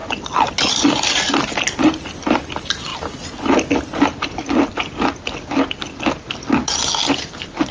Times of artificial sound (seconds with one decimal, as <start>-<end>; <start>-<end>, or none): none